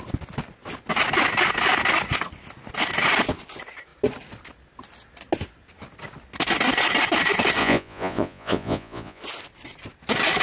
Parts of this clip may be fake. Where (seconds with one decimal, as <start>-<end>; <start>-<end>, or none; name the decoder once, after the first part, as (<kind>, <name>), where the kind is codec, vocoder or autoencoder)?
7.6-9.2 (vocoder, Vocos)